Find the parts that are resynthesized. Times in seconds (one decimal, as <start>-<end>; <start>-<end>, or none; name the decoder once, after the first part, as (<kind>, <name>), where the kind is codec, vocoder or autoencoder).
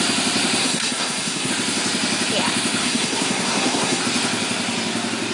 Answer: 0.6-1.5 (codec, SNAC); 2.8-4.0